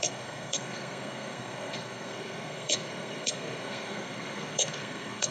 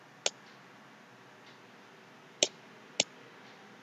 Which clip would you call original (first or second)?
second